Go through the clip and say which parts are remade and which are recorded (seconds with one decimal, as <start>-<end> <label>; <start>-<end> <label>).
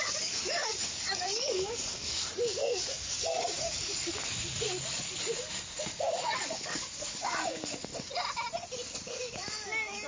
0.0-7.9 remade; 7.9-9.0 recorded; 9.0-10.1 remade